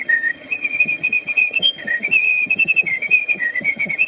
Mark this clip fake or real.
fake